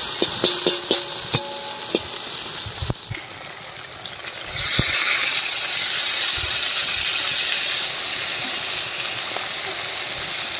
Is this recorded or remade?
recorded